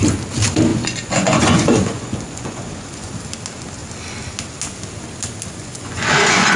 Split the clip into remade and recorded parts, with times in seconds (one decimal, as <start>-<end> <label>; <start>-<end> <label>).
0.0-0.7 recorded; 0.7-3.1 remade; 3.1-5.6 recorded; 5.6-6.6 remade

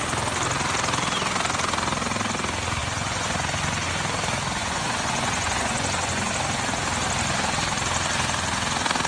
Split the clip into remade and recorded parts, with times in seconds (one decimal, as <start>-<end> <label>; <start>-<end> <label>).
0.0-2.8 recorded; 2.8-3.9 remade; 3.9-4.6 recorded; 4.6-6.3 remade; 6.3-9.1 recorded

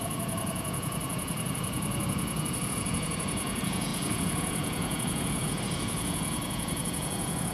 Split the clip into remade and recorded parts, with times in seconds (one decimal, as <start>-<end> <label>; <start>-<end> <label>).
0.0-7.5 remade

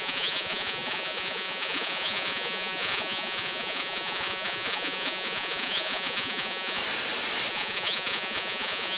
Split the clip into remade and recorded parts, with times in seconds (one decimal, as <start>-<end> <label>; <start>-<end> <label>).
0.0-6.8 remade; 6.8-7.5 recorded; 7.5-9.0 remade

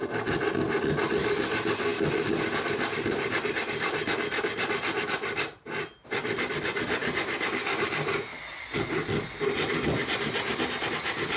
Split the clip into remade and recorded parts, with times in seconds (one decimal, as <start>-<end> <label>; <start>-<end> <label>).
0.0-11.4 recorded

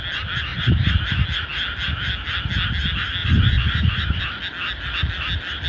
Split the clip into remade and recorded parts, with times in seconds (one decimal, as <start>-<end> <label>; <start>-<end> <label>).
0.0-0.5 recorded; 0.5-1.0 remade; 1.0-3.2 recorded; 3.2-4.2 remade; 4.2-5.7 recorded

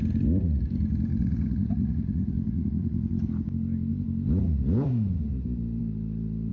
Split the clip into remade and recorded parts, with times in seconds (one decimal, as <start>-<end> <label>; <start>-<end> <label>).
0.0-1.1 recorded; 1.1-3.3 remade; 3.3-6.5 recorded

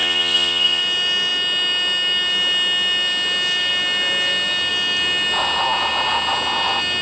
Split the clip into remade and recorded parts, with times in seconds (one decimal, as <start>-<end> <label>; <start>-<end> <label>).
0.0-0.8 remade; 0.8-7.0 recorded